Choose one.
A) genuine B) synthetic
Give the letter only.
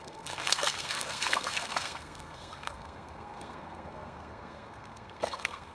B